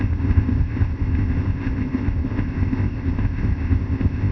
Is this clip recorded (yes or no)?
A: no